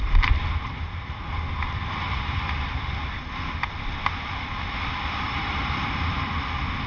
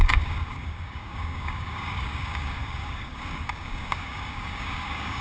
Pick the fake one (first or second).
second